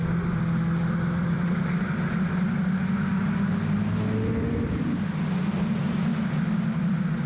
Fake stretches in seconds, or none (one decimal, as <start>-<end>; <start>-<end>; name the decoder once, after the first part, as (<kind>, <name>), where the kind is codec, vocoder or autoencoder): none